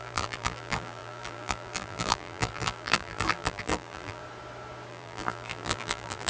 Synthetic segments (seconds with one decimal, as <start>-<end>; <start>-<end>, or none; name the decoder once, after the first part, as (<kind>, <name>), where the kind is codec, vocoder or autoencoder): 0.0-4.2 (vocoder, BigVGAN v2); 4.9-6.3